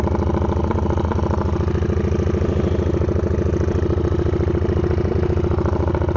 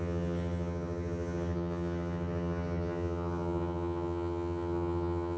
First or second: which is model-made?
second